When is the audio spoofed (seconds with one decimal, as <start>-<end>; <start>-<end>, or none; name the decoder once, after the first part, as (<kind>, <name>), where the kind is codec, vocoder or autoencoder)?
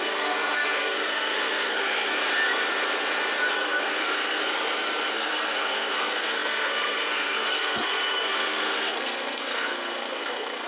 0.0-2.2 (codec, SNAC); 3.5-4.4; 5.1-10.7